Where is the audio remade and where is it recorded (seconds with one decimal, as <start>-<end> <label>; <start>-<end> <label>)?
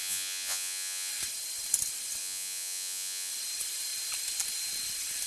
0.0-1.1 remade; 1.1-2.2 recorded; 2.2-3.3 remade; 3.3-5.3 recorded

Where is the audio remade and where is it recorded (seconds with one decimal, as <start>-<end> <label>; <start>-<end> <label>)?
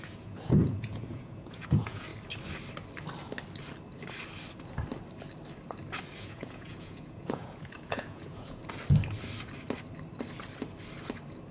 0.0-2.1 remade; 2.1-6.2 recorded; 6.2-8.6 remade; 8.6-11.5 recorded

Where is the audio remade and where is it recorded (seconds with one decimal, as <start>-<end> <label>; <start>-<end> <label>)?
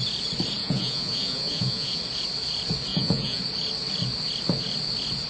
0.0-0.6 recorded; 0.6-2.0 remade; 2.0-2.9 recorded; 2.9-3.4 remade; 3.4-5.3 recorded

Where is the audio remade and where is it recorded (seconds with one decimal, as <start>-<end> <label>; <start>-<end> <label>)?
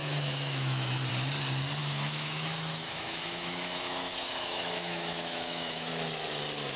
0.0-1.1 remade; 1.1-1.8 recorded; 1.8-5.9 remade; 5.9-6.8 recorded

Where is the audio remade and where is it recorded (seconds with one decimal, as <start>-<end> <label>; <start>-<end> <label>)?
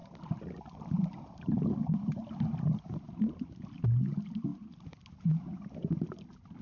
0.0-6.6 recorded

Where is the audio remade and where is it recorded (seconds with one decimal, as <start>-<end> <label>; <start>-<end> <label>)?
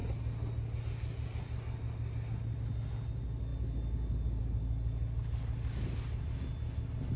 0.0-7.2 recorded